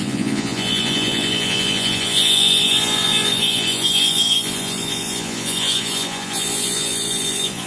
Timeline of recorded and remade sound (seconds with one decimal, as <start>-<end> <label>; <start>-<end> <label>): 0.0-7.7 remade